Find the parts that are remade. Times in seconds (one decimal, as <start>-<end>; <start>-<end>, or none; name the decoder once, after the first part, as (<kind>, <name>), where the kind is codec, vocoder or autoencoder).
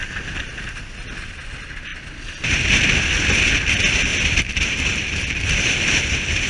4.1-6.0 (vocoder, BigVGAN v2)